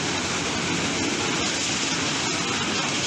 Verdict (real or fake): real